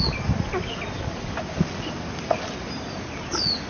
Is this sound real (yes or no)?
yes